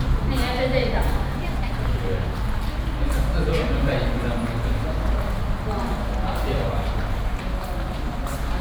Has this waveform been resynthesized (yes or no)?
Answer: no